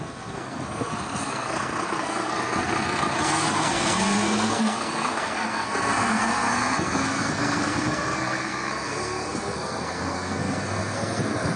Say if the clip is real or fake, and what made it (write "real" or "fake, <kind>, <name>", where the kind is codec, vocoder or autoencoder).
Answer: fake, codec, SNAC